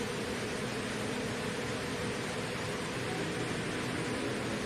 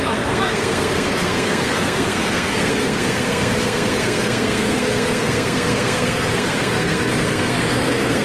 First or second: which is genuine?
first